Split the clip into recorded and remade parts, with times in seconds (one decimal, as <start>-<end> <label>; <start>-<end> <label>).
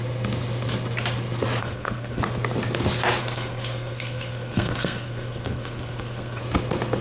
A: 0.0-1.6 recorded; 1.6-2.2 remade; 2.2-3.2 recorded; 3.2-6.4 remade; 6.4-7.0 recorded